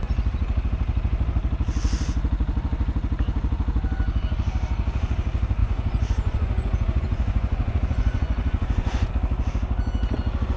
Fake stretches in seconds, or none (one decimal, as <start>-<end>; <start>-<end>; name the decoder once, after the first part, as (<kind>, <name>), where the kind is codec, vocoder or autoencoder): 5.6-9.1 (vocoder, Vocos)